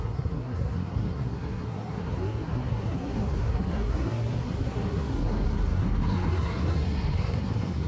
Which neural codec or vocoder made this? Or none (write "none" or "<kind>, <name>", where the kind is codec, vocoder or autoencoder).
codec, SNAC